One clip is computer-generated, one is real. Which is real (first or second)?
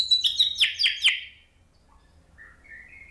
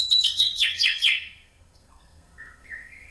first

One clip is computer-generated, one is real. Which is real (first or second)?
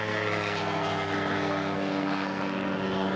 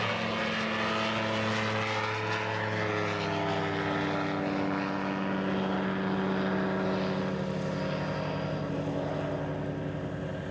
second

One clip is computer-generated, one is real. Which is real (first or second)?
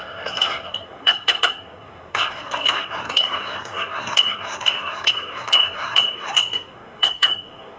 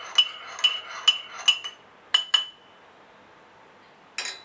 second